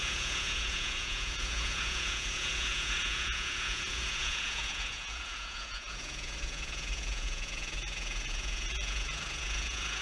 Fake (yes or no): yes